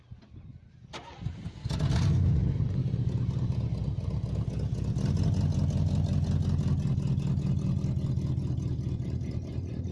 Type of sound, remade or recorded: recorded